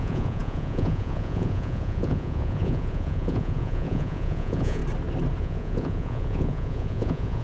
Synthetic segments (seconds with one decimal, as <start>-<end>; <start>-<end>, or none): 0.0-4.8; 5.4-7.4